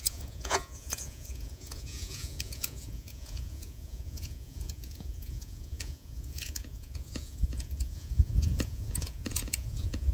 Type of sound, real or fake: fake